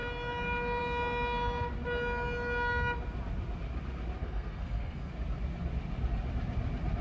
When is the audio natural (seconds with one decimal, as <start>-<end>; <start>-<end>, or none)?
0.0-4.2; 5.1-7.0